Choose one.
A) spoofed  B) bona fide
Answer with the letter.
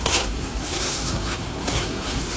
A